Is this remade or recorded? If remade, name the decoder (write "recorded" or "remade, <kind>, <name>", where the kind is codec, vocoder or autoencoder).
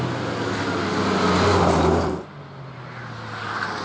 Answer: recorded